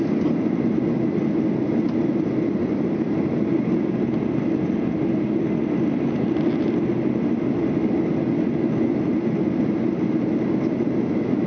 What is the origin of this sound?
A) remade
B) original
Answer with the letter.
B